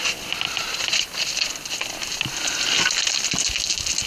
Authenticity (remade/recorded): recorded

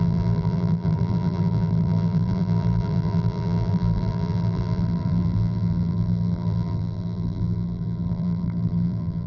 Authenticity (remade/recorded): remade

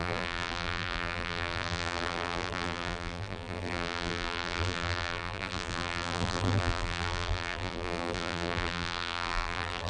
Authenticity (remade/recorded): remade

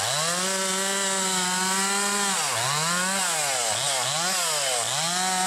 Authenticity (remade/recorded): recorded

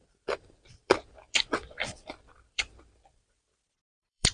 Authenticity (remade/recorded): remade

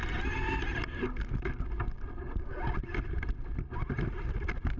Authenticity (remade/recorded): recorded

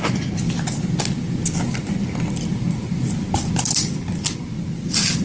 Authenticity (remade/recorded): recorded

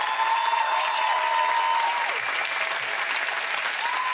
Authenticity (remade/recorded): recorded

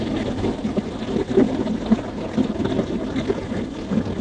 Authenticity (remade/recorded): recorded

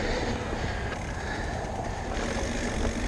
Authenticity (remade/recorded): recorded